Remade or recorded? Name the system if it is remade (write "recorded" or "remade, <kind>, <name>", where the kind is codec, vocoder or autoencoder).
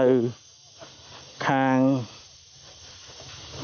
recorded